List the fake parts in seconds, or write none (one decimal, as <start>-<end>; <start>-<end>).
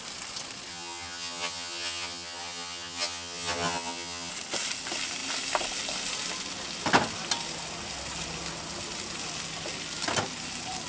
0.7-4.3